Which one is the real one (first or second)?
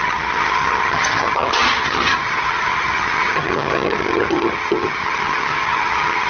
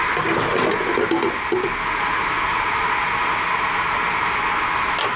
second